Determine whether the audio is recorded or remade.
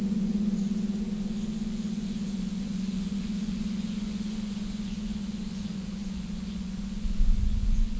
remade